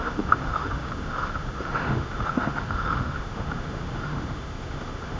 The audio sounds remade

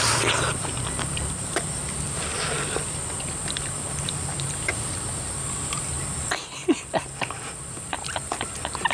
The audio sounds remade